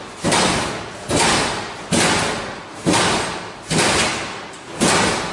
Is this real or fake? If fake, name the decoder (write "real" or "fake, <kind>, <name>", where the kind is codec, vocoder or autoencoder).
real